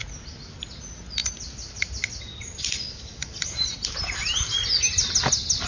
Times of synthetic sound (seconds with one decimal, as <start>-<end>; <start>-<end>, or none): none